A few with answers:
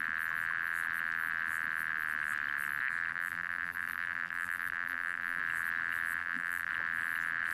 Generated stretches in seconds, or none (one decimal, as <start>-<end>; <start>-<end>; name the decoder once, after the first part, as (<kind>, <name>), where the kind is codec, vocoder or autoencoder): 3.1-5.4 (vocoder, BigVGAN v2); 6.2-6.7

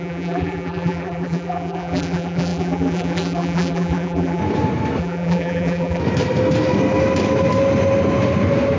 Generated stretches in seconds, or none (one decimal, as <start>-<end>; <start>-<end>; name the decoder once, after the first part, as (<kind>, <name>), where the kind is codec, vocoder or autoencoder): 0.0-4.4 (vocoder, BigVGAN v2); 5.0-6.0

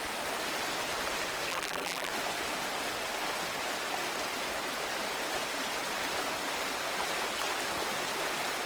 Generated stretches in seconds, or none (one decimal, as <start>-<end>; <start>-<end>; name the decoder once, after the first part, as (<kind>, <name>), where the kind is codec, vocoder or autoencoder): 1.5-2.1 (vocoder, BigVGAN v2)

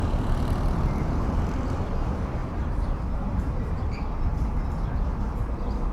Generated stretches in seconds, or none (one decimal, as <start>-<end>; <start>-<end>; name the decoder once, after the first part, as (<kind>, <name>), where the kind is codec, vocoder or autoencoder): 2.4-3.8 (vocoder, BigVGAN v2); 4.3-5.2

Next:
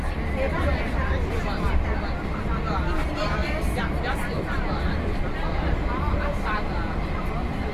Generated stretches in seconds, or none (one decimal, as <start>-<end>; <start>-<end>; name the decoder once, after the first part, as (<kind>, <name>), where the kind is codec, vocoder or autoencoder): none